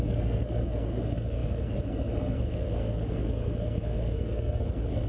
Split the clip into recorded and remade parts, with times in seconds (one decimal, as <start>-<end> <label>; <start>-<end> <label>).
0.0-5.1 remade